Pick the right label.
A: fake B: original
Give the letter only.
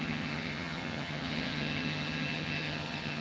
A